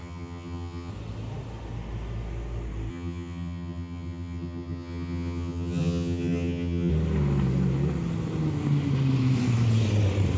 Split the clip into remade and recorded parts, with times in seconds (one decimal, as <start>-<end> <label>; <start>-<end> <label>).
0.0-0.9 remade; 0.9-2.9 recorded; 2.9-6.9 remade; 6.9-10.4 recorded